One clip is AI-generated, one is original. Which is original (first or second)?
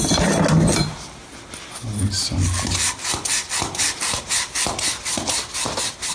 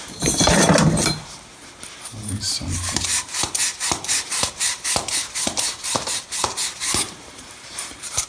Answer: first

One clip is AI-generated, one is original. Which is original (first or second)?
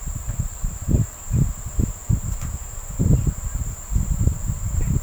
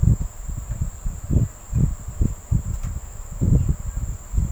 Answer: second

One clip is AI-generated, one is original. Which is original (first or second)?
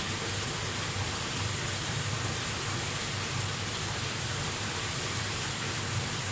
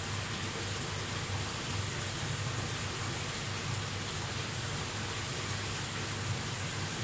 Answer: second